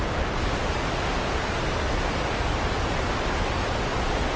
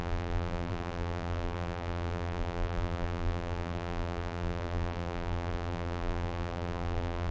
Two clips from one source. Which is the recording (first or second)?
first